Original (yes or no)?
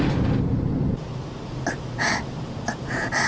yes